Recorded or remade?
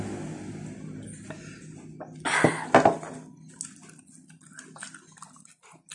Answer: recorded